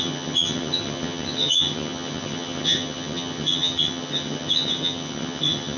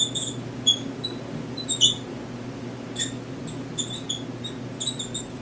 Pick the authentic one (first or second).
second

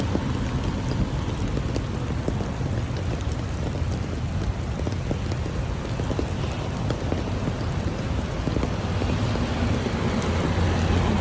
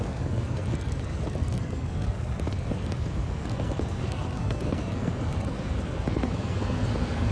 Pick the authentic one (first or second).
first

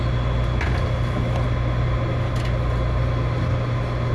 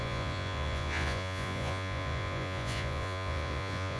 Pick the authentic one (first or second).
first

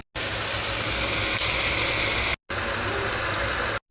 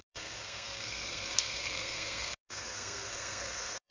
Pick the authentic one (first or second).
first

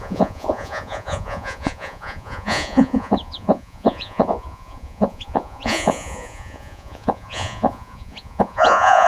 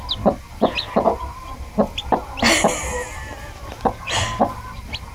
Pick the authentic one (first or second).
second